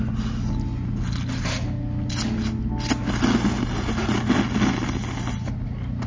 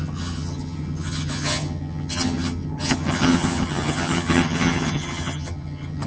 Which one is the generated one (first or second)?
second